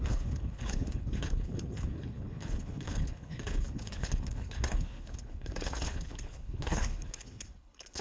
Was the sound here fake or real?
fake